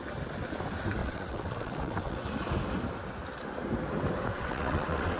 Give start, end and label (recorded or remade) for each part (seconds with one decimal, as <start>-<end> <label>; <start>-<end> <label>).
0.0-1.0 recorded; 1.0-2.3 remade; 2.3-4.3 recorded; 4.3-5.2 remade